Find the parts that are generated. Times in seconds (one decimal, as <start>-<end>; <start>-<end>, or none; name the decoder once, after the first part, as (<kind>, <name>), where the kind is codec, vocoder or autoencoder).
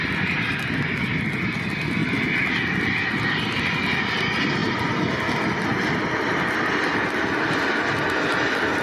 none